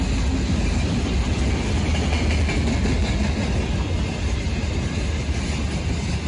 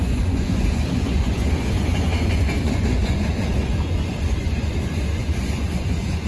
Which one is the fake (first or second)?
second